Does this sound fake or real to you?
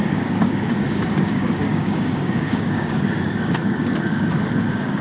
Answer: fake